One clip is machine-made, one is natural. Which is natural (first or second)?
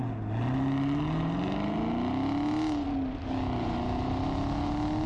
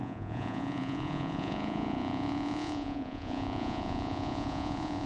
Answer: first